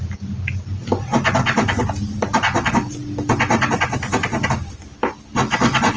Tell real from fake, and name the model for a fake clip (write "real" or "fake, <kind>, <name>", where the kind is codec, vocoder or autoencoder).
real